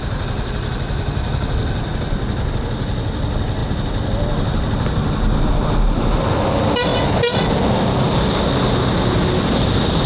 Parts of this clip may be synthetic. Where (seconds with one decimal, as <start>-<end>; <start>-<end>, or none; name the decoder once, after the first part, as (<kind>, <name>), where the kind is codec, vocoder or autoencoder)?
none